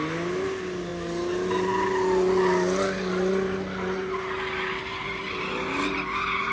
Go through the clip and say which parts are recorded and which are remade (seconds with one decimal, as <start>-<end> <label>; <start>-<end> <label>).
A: 0.0-6.5 recorded